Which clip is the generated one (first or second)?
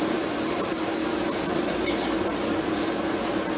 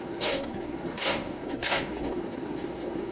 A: second